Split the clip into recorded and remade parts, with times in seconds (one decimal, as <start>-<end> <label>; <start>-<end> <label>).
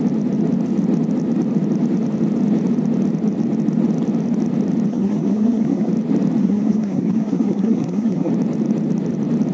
0.0-4.9 recorded; 4.9-5.9 remade; 5.9-6.4 recorded; 6.4-8.3 remade; 8.3-9.5 recorded